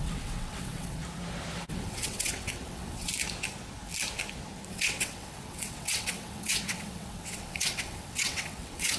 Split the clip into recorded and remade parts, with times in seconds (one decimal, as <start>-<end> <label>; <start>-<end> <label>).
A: 0.0-1.0 remade; 1.0-1.7 recorded; 1.7-3.1 remade; 3.1-4.7 recorded; 4.7-9.0 remade